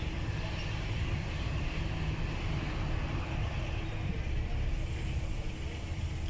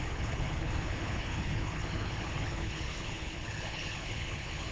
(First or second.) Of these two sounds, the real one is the first